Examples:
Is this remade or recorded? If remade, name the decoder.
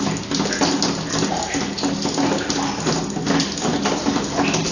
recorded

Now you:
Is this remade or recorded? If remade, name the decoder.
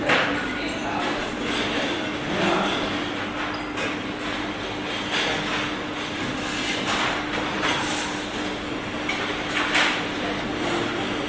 recorded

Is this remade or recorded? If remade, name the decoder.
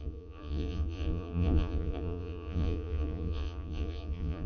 remade, vocoder, Vocos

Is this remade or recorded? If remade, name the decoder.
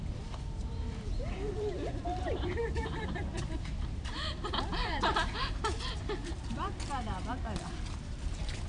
remade, vocoder, BigVGAN v2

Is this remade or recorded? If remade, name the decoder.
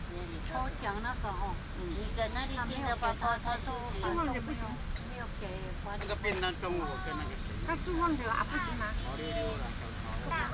recorded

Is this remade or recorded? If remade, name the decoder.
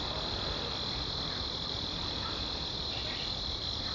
remade, vocoder, BigVGAN v2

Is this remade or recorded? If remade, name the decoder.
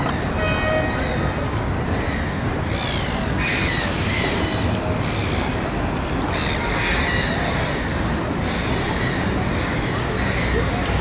recorded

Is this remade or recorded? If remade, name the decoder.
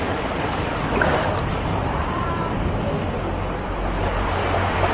recorded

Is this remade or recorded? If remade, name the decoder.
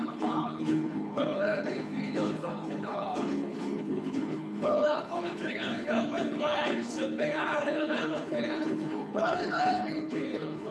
remade, codec, HILCodec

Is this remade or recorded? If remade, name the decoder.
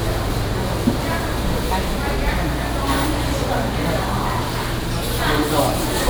recorded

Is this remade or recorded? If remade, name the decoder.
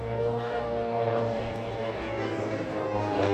remade, codec, DAC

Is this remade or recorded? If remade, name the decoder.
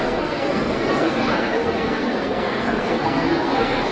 remade, codec, SNAC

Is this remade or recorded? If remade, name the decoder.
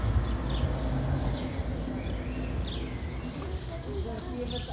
recorded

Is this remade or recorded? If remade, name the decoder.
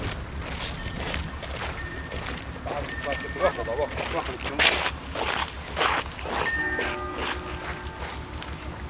recorded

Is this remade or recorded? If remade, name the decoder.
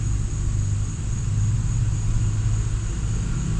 recorded